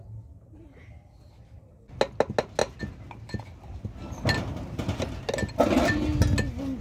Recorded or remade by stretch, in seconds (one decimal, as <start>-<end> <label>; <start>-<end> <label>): 0.0-6.8 recorded